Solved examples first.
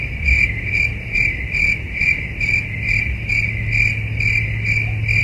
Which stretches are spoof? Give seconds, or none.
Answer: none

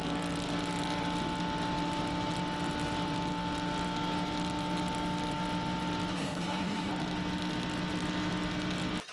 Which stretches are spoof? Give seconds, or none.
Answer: 6.1-6.9 (codec, SNAC)

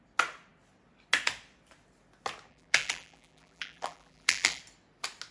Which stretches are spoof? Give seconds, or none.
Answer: 2.5-4.6 (vocoder, BigVGAN v2)